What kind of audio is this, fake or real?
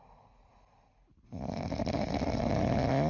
real